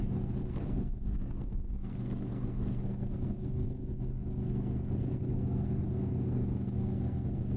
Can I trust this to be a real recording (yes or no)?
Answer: no